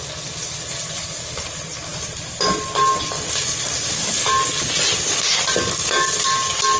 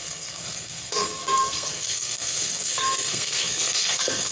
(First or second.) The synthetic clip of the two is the second